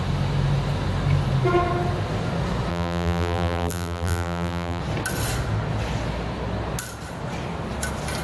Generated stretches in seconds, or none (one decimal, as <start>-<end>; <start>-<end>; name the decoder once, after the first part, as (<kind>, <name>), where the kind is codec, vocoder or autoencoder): 2.7-4.8 (vocoder, BigVGAN v2)